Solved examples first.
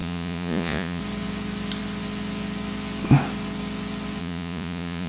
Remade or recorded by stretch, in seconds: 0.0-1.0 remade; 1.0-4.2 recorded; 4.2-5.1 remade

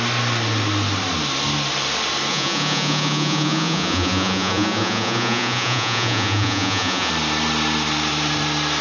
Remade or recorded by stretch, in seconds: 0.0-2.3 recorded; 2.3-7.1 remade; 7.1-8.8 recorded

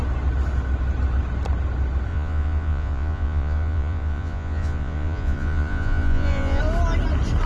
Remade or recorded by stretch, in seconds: 0.0-2.1 recorded; 2.1-6.6 remade; 6.6-7.5 recorded

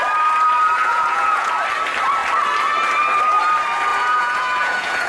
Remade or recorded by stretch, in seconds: 0.0-0.9 recorded; 0.9-1.5 remade; 1.5-3.9 recorded; 3.9-5.1 remade

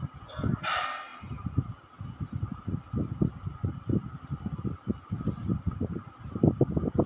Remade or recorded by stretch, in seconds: 0.0-7.1 recorded